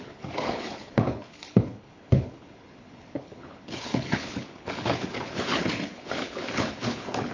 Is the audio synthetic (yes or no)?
yes